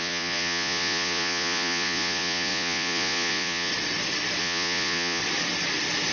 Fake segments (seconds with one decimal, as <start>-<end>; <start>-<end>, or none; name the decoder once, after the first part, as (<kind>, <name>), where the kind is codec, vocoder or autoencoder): 0.0-3.7 (vocoder, Vocos); 4.4-5.2

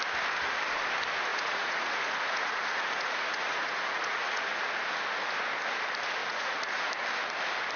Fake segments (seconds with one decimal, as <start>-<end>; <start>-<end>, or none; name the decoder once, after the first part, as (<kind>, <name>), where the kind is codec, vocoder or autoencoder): 1.3-4.7 (vocoder, Vocos); 6.2-6.9